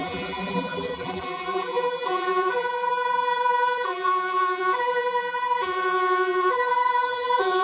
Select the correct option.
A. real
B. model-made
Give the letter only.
B